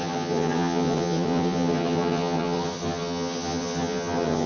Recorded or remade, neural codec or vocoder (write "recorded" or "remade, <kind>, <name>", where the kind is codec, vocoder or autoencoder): remade, vocoder, HiFi-GAN